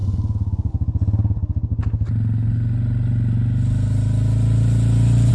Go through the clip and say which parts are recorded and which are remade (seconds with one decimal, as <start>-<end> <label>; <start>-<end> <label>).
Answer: 0.0-5.3 recorded